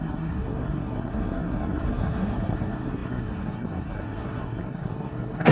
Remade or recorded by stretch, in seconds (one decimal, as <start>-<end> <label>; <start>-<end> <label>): 0.0-5.5 remade